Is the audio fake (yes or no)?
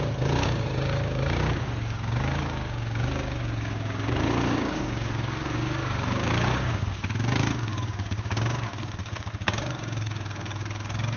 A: yes